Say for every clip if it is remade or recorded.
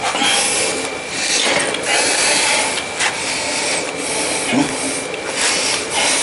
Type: recorded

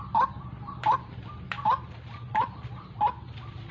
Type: remade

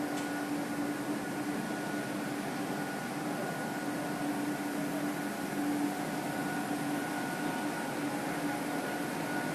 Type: recorded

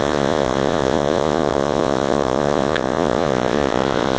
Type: remade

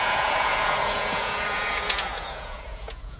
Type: remade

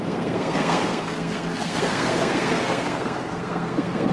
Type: remade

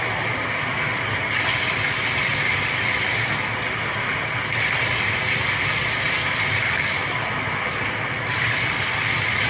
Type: recorded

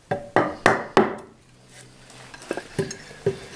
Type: recorded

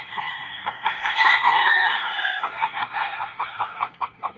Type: remade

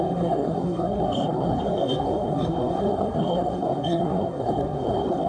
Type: remade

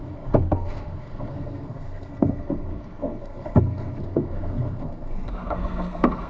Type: remade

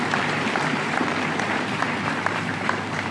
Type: remade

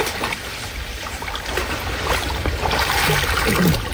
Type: recorded